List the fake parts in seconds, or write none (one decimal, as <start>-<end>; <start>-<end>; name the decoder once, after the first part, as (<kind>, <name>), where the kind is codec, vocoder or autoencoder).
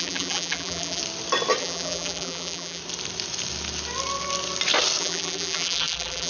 0.0-1.0 (vocoder, BigVGAN v2); 1.6-2.8; 5.0-6.3